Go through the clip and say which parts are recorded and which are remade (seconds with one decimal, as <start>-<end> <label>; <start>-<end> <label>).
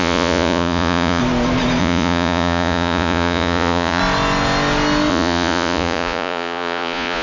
0.0-1.2 remade; 1.2-1.8 recorded; 1.8-4.0 remade; 4.0-5.1 recorded; 5.1-7.2 remade